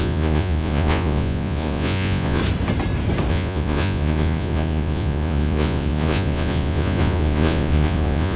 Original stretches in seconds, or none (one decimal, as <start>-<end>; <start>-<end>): 2.4-3.3